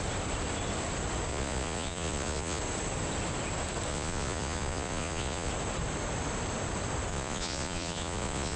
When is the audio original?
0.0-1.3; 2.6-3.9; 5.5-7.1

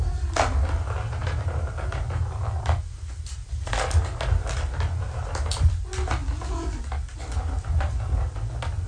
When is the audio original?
0.0-8.9

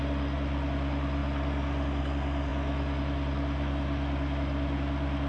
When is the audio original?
0.0-5.3